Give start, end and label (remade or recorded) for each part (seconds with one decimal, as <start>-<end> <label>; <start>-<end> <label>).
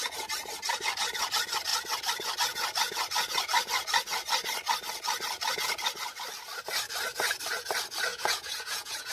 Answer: 0.0-8.1 recorded; 8.1-9.1 remade